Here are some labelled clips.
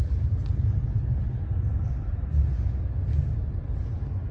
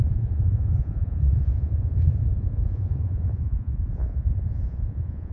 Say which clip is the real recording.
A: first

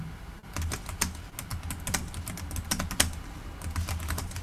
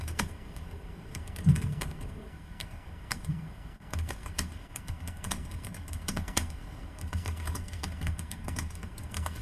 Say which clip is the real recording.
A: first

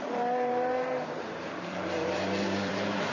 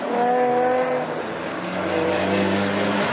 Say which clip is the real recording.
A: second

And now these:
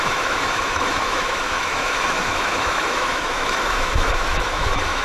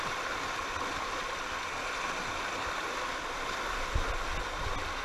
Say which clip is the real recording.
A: second